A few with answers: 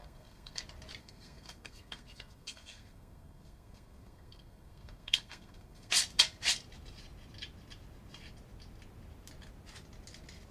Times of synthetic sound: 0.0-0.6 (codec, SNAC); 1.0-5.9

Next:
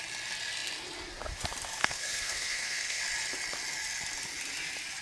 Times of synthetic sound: 1.8-3.0 (codec, SNAC)

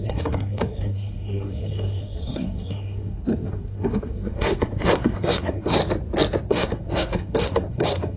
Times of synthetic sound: 0.0-5.8 (codec, SNAC); 6.5-8.2

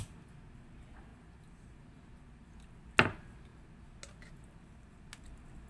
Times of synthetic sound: none